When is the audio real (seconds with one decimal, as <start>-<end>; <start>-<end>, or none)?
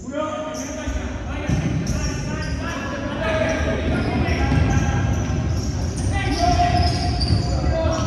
0.0-2.9; 3.6-6.2; 7.1-8.1